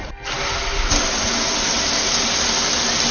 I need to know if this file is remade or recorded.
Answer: recorded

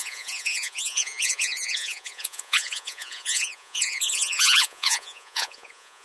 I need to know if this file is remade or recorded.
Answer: remade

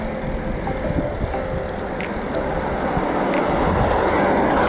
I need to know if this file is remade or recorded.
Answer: recorded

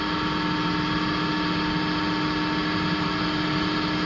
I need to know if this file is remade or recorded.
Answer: recorded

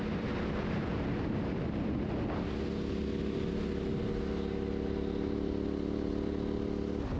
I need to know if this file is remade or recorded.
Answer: recorded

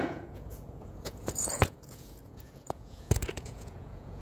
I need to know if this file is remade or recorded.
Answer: remade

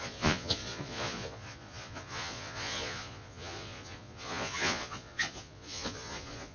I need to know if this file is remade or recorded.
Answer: remade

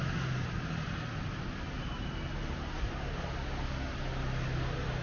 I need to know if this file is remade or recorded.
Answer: recorded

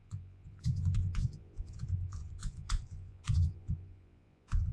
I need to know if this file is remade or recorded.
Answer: remade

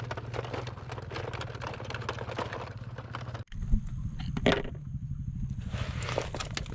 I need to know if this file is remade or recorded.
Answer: recorded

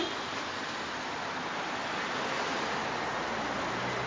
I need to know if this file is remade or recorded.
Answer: recorded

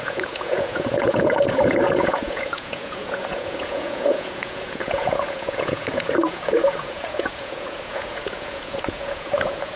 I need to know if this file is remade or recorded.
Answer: remade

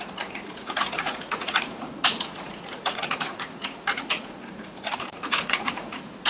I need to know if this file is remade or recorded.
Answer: remade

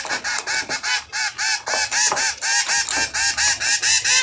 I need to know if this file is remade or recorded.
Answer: recorded